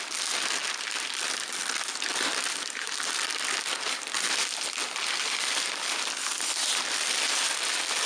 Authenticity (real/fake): real